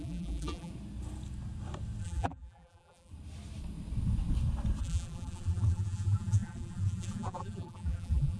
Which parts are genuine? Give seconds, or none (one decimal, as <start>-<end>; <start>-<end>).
0.7-2.0; 3.1-4.8